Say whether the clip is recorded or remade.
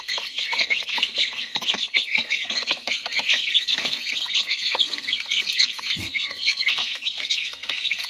remade